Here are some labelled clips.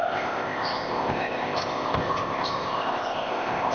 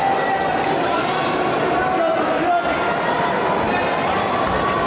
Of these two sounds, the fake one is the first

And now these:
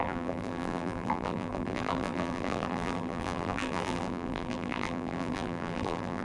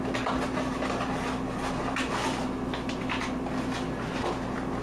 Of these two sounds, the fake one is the first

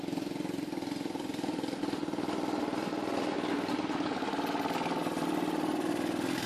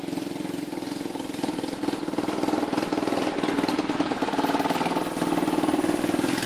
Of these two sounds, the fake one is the first